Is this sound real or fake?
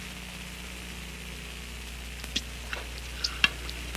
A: real